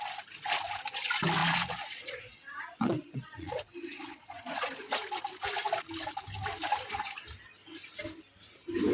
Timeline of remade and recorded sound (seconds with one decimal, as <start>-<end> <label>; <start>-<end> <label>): 0.0-1.4 recorded; 1.4-4.9 remade; 4.9-8.9 recorded